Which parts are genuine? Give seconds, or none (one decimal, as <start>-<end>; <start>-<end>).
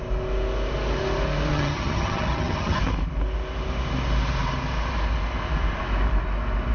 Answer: 0.0-1.5; 2.8-6.7